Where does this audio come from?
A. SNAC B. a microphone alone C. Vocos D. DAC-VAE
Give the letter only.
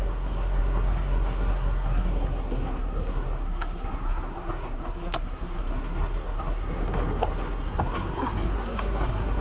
A